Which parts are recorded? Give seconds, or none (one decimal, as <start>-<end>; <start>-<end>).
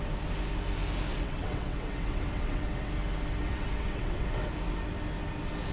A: 0.0-1.1; 2.9-3.4; 4.5-5.7